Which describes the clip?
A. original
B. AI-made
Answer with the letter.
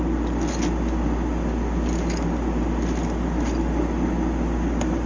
A